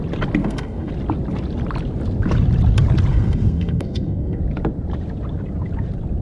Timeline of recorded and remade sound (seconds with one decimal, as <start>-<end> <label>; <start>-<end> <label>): 0.0-0.4 recorded; 0.4-0.9 remade; 0.9-3.1 recorded; 3.1-4.4 remade; 4.4-6.2 recorded